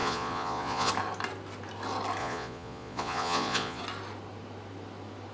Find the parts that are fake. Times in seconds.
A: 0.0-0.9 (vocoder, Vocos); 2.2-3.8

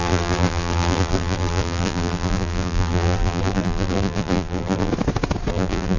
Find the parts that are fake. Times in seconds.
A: 0.0-4.9 (vocoder, BigVGAN v2); 5.5-6.0

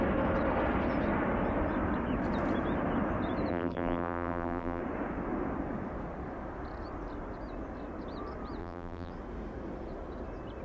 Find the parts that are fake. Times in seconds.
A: 3.5-4.8 (vocoder, BigVGAN v2); 8.6-9.1

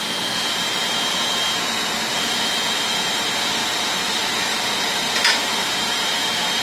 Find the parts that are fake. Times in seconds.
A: 3.6-5.1 (vocoder, BigVGAN v2); 5.6-6.6

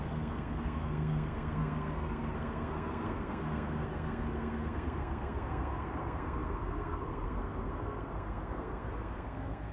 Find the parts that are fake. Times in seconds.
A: 0.0-9.7 (codec, SNAC)

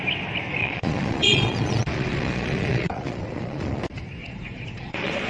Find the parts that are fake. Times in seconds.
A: 0.6-3.8 (vocoder, Vocos); 4.2-5.3

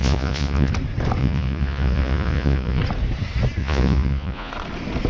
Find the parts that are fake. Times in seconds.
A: 0.0-0.7 (vocoder, Vocos); 1.2-2.8; 3.6-4.5

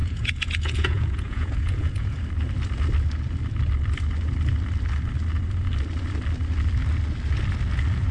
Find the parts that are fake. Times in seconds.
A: 0.0-2.2 (vocoder, Vocos)